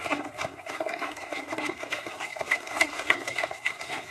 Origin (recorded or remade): remade